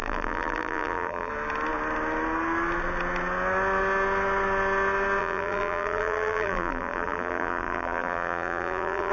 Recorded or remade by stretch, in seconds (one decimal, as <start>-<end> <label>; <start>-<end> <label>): 0.0-1.3 remade; 1.3-5.2 recorded; 5.2-9.1 remade